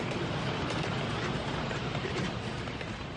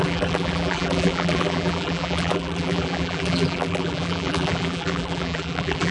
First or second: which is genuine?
first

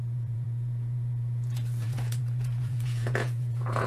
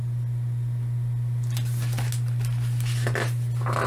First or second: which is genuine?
second